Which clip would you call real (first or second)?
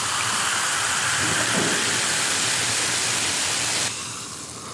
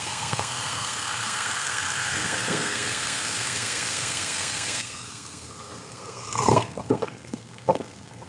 first